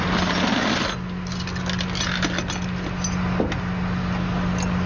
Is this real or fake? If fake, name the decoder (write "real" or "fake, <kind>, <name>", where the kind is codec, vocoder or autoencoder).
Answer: real